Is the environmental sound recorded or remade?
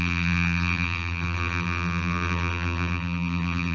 remade